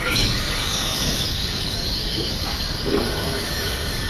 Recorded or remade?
remade